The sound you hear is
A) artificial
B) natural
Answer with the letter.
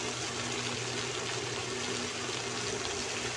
B